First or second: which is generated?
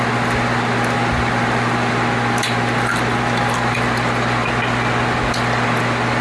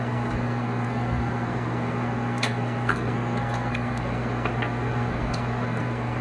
second